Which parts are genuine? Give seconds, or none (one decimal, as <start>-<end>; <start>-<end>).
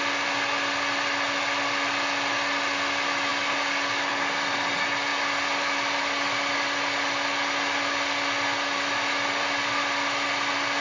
0.0-10.8